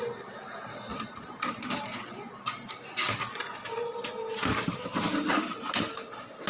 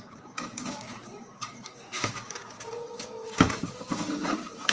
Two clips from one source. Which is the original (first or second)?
first